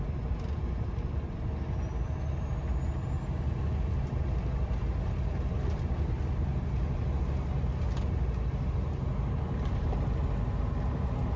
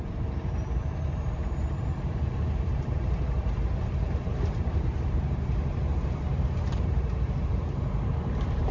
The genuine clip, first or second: first